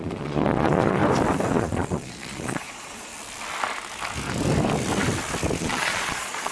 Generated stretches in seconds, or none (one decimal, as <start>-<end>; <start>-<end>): 0.0-1.0; 1.5-3.1; 5.6-6.5